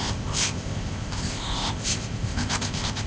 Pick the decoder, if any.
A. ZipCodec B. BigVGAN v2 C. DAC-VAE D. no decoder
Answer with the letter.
A